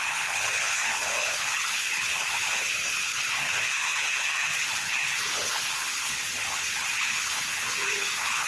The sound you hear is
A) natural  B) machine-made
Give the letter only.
B